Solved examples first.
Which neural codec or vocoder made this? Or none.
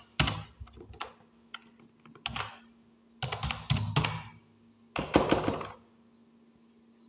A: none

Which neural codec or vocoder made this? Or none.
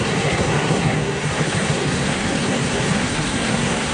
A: codec, SNAC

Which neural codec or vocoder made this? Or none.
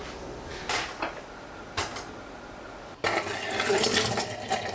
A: none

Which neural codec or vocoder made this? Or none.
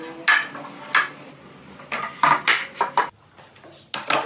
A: none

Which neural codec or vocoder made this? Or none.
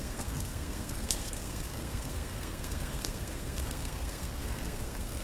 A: codec, SNAC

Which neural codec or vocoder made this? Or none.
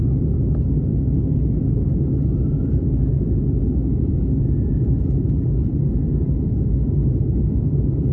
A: none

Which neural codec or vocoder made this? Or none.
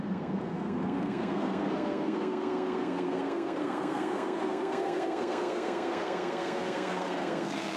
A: codec, SNAC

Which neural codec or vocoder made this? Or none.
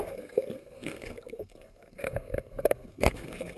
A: codec, SNAC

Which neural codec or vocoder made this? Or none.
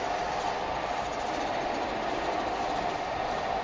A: none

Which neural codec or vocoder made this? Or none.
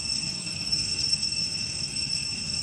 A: codec, SNAC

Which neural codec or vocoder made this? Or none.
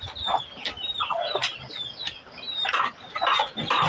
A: none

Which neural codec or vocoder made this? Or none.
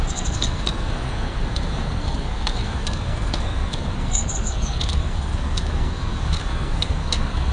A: codec, SNAC